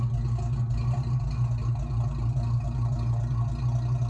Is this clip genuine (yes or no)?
yes